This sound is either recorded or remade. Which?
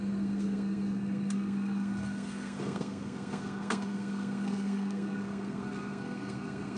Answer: remade